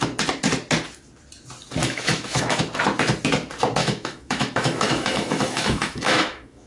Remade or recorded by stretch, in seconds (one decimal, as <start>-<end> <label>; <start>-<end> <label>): 0.0-1.8 recorded; 1.8-2.6 remade; 2.6-3.8 recorded; 3.8-6.7 remade